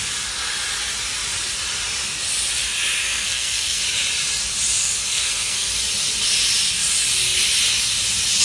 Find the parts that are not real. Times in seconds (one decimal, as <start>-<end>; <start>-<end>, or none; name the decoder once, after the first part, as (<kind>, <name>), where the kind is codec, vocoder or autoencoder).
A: 3.0-3.8 (codec, SNAC); 4.8-5.7